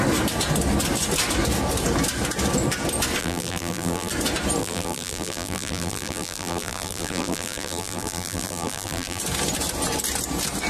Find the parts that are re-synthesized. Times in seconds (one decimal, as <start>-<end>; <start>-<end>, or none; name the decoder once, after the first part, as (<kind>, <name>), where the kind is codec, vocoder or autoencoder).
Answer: 3.2-4.1 (vocoder, BigVGAN v2); 4.6-9.2